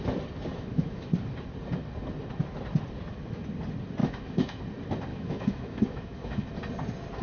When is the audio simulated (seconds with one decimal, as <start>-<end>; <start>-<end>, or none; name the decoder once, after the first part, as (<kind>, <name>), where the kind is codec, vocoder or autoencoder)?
0.5-1.1 (autoencoder, DAC-VAE); 4.0-4.6; 5.1-6.5